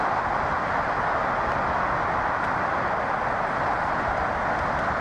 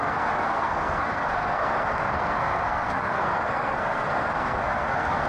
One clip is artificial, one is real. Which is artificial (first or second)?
second